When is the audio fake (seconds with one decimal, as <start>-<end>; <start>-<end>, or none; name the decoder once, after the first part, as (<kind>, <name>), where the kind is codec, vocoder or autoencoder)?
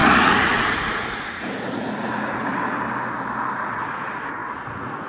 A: 0.0-2.5 (vocoder, Vocos); 3.6-5.1